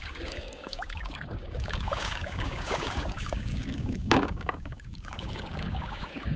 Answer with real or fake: fake